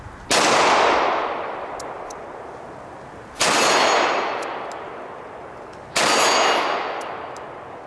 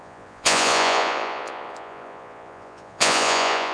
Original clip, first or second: first